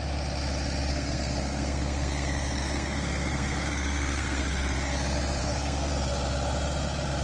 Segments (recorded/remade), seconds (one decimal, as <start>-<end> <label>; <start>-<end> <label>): 0.0-0.9 recorded; 0.9-4.4 remade; 4.4-5.4 recorded; 5.4-5.9 remade; 5.9-7.2 recorded